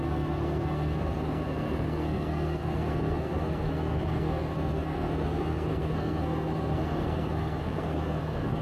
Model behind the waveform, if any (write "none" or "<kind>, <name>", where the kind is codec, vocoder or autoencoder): codec, SNAC